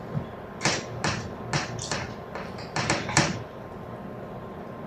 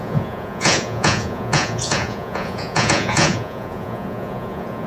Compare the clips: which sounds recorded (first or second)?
first